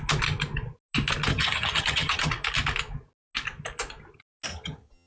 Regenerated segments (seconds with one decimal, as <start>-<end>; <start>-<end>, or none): 1.3-2.3; 4.5-5.1